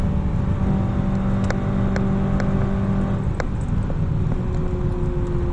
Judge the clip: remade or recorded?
recorded